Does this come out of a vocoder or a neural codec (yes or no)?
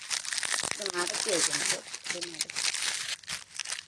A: no